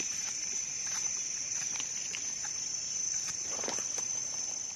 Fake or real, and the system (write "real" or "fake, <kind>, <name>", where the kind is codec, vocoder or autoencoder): fake, vocoder, BigVGAN v2